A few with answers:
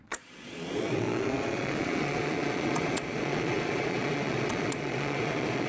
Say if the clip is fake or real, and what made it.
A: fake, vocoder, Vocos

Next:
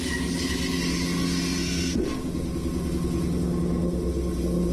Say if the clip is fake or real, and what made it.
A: real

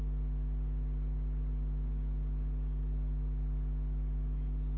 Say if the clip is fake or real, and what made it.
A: real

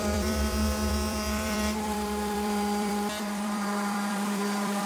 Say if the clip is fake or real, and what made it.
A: fake, vocoder, BigVGAN v2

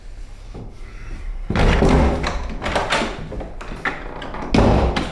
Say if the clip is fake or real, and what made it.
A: real